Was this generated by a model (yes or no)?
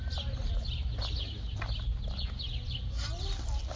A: no